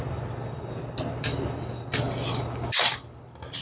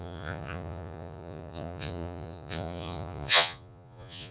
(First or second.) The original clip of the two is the first